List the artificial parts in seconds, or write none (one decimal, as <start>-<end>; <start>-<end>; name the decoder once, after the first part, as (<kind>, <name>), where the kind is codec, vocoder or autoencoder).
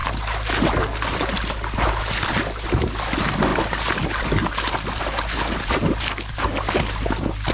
none